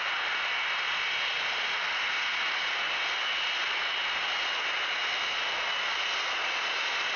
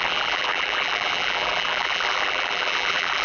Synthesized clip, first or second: second